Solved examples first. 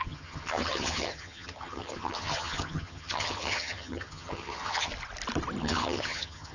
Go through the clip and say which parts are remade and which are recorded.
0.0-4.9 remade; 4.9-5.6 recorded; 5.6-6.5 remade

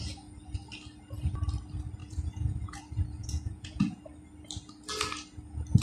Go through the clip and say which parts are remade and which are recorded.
0.0-2.0 recorded; 2.0-2.8 remade; 2.8-3.2 recorded; 3.2-4.0 remade; 4.0-5.8 recorded

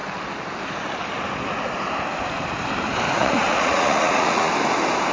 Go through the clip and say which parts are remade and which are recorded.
0.0-3.2 recorded; 3.2-4.5 remade; 4.5-5.1 recorded

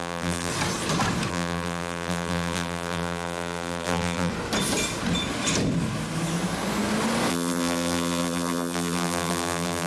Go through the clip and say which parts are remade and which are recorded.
0.0-0.5 remade; 0.5-1.3 recorded; 1.3-4.3 remade; 4.3-7.3 recorded; 7.3-9.9 remade

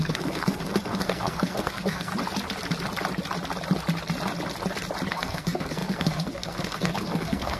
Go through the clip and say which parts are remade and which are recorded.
0.0-2.1 remade; 2.1-5.1 recorded; 5.1-7.6 remade

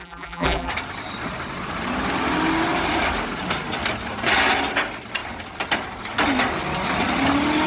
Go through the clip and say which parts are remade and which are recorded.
0.0-0.7 remade; 0.7-7.7 recorded

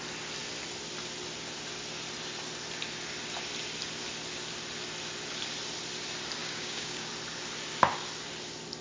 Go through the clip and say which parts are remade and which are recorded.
0.0-6.4 recorded; 6.4-7.1 remade; 7.1-8.8 recorded

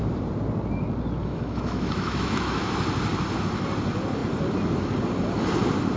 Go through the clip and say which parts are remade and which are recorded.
0.0-1.2 recorded; 1.2-2.8 remade; 2.8-6.0 recorded